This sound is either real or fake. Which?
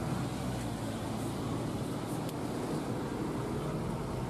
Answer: real